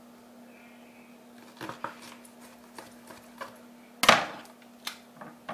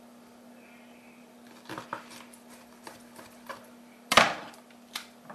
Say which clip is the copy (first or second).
second